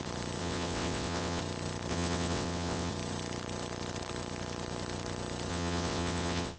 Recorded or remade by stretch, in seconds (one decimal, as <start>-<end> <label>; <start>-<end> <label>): 0.0-0.4 recorded; 0.4-1.4 remade; 1.4-1.9 recorded; 1.9-2.9 remade; 2.9-5.5 recorded; 5.5-6.6 remade